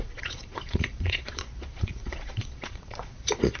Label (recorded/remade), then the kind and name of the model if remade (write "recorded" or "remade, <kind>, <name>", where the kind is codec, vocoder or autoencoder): remade, vocoder, Vocos